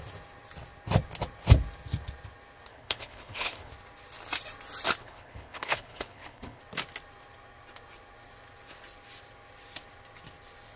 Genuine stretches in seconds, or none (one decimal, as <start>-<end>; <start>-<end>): 0.0-2.7; 3.7-5.0; 6.6-10.8